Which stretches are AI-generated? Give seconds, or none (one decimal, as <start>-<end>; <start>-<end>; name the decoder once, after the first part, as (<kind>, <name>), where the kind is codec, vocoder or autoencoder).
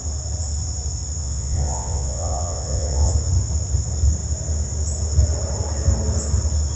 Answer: 1.2-3.1 (vocoder, WaveNeXt)